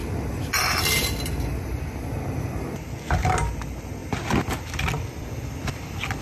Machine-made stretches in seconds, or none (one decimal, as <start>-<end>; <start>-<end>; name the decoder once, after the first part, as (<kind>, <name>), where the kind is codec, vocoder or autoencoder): none